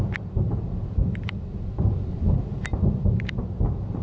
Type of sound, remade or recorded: remade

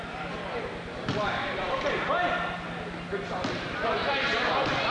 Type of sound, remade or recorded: remade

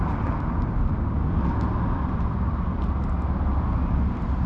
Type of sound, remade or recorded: recorded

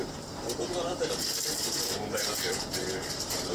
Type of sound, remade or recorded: remade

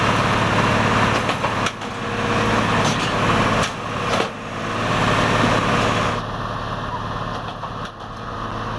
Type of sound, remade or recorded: recorded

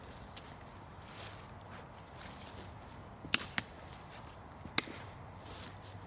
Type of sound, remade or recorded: recorded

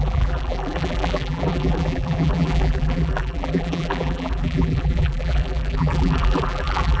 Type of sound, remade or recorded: remade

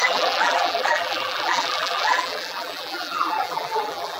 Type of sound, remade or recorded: remade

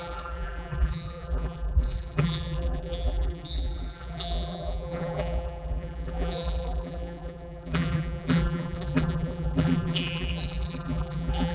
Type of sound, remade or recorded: remade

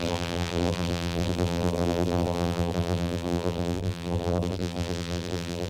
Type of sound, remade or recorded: remade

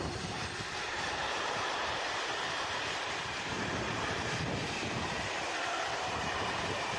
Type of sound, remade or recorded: remade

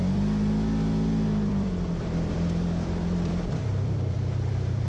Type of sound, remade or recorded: remade